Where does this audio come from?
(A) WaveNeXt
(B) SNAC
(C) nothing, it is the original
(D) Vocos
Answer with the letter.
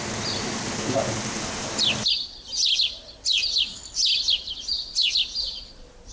C